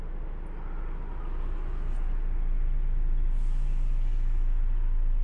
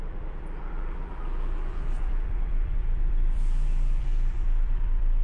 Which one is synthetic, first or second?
second